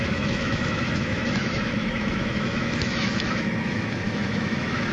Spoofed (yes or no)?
yes